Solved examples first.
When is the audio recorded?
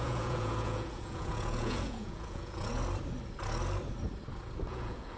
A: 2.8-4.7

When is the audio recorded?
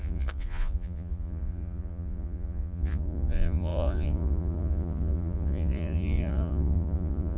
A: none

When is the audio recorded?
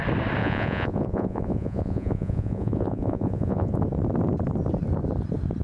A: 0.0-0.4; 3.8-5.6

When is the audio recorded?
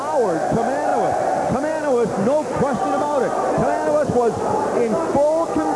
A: 0.0-5.8